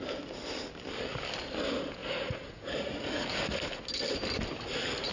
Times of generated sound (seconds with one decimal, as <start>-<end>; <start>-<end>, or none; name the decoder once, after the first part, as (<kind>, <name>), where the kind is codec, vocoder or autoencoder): 2.0-3.1 (vocoder, Vocos)